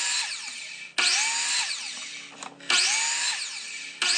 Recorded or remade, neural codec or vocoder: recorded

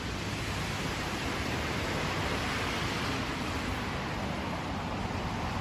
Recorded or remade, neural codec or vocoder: recorded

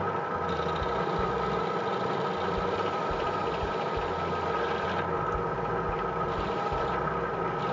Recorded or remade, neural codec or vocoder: recorded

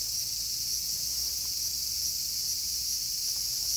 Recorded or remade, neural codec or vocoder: recorded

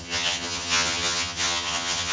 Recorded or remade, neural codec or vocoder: remade, vocoder, HiFi-GAN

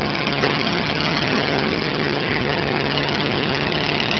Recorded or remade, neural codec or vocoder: remade, vocoder, HiFi-GAN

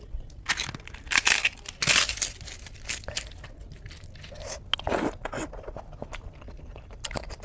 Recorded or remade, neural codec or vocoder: recorded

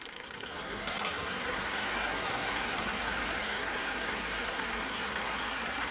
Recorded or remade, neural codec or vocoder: remade, codec, SNAC